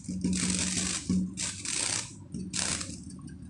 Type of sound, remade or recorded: recorded